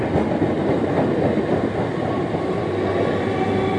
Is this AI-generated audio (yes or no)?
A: no